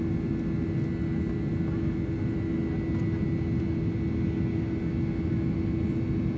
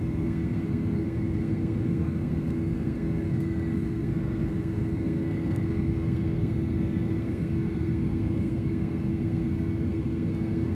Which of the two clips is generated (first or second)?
second